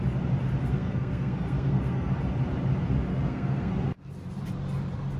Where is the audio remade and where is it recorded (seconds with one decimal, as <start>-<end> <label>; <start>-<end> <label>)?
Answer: 0.0-0.6 recorded; 0.6-2.1 remade; 2.1-3.1 recorded; 3.1-3.7 remade; 3.7-5.2 recorded